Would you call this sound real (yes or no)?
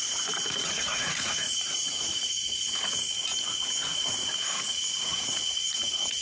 no